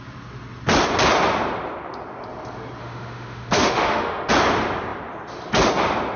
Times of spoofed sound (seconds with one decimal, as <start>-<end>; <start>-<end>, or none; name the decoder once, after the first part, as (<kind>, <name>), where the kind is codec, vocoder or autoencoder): 2.8-4.3 (autoencoder, DAC-VAE)